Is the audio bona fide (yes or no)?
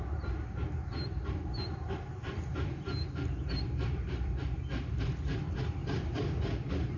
no